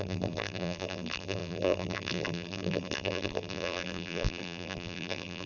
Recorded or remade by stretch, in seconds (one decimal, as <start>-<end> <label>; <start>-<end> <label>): 0.0-5.5 remade